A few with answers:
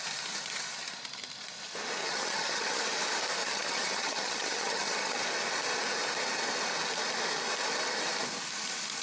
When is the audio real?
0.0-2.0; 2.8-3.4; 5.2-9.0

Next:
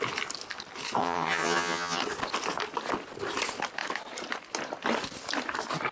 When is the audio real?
0.0-1.0; 2.0-5.9

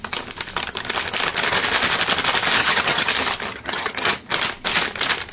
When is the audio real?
0.0-2.6; 3.1-3.5; 4.3-5.3